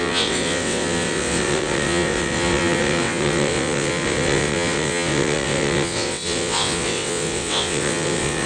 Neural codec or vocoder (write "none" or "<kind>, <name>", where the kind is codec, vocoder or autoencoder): vocoder, WaveNeXt